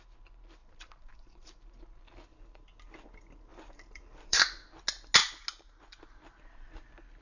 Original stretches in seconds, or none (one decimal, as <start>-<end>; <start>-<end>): 0.0-0.6; 1.7-3.5; 4.4-7.2